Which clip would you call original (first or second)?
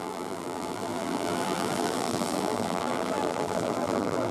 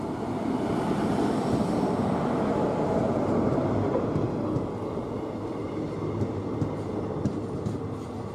second